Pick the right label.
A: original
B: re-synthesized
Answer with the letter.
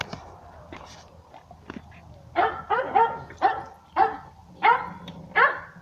A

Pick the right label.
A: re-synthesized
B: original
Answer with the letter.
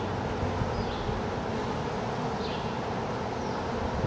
B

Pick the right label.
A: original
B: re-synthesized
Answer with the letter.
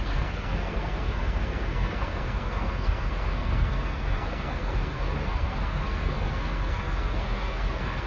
B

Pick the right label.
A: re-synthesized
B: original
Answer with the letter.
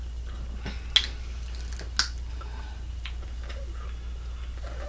B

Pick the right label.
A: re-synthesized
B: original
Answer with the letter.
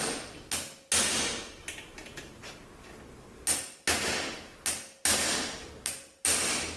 B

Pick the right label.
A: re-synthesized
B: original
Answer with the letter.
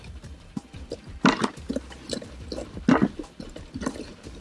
B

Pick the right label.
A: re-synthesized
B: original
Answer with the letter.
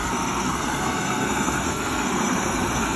A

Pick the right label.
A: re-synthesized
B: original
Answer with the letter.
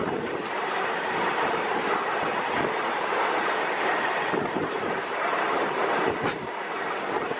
B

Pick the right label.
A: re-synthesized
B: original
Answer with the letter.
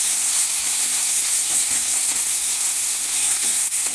A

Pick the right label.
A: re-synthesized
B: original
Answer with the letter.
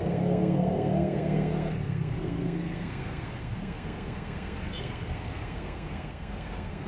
A